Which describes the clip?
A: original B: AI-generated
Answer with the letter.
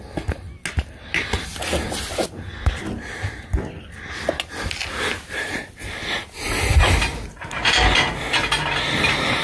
A